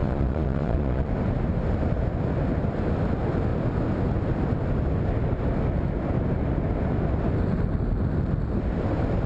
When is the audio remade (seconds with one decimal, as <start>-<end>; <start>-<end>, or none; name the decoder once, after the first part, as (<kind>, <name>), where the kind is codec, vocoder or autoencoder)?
0.0-1.1 (vocoder, Vocos)